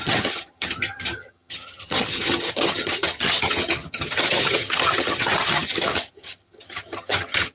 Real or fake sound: fake